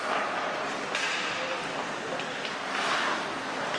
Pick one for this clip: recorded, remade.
recorded